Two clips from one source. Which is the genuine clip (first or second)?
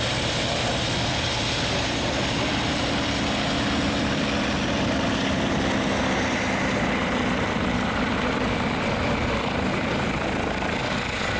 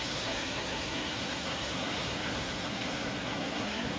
first